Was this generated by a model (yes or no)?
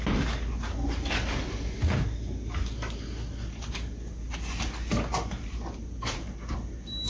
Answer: no